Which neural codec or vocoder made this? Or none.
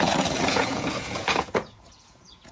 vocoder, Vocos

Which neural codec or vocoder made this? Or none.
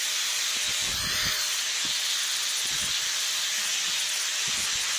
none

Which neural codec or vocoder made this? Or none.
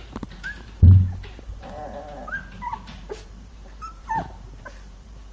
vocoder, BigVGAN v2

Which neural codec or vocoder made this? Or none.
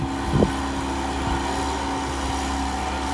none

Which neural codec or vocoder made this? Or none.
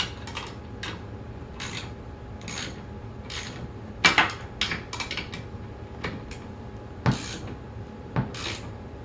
none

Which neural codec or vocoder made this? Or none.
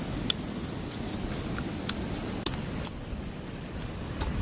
none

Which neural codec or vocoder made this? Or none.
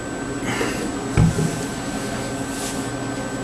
none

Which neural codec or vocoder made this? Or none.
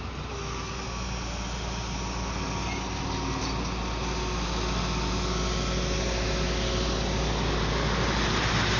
none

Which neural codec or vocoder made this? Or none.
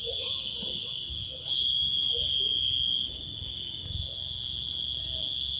codec, DAC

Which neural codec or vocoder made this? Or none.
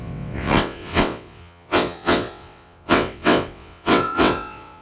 vocoder, WaveNeXt